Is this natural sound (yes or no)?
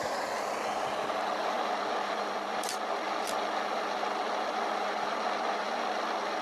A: yes